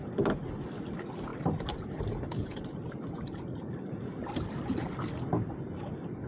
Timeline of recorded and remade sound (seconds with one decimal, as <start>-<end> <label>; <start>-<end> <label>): 0.0-1.3 recorded; 1.3-5.1 remade; 5.1-6.3 recorded

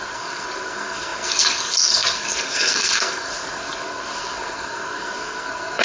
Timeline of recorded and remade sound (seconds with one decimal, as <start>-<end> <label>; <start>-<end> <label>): 0.0-5.8 remade

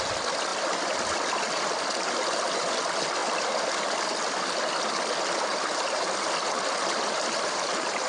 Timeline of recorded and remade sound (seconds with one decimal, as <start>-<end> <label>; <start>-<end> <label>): 0.0-0.5 recorded; 0.5-1.7 remade; 1.7-8.1 recorded

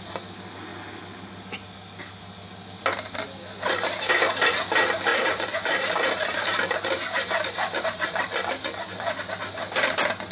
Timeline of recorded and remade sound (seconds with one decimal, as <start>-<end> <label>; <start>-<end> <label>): 0.0-5.1 recorded; 5.1-9.3 remade; 9.3-10.3 recorded

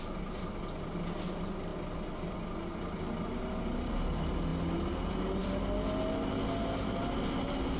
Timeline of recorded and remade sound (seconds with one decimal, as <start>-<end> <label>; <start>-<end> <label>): 0.0-7.8 recorded

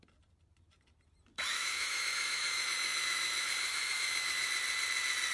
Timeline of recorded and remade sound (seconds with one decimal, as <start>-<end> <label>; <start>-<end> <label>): 0.0-1.5 recorded; 1.5-4.5 remade; 4.5-5.3 recorded

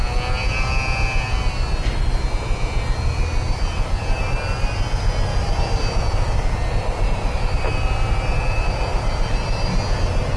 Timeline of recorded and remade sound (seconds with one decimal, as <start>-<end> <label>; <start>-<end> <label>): 0.0-10.4 recorded

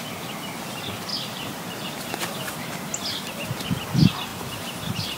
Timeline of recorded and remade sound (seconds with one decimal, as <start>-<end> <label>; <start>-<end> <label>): 0.0-1.1 recorded; 1.1-2.5 remade; 2.5-5.2 recorded